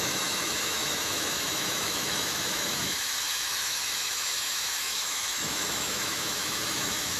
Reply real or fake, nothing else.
fake